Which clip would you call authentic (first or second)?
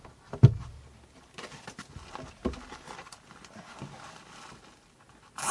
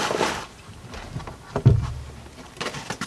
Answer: second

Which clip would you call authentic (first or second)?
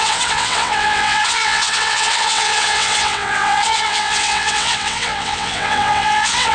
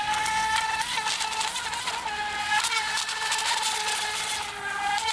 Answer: second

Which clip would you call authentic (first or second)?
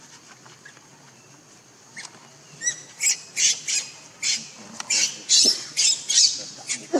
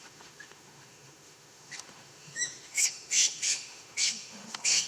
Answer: first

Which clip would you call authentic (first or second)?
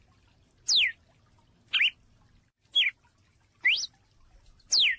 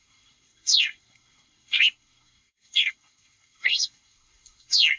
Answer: first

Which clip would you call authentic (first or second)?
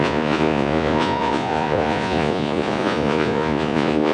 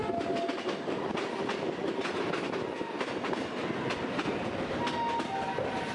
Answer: second